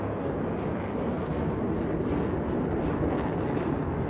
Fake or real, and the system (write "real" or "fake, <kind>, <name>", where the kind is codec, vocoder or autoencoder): real